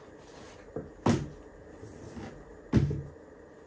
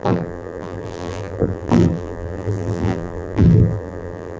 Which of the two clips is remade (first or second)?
second